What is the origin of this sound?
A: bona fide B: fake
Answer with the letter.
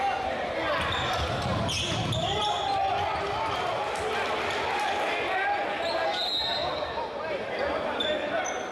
A